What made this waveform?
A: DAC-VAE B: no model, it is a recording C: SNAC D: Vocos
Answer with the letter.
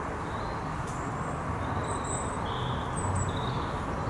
B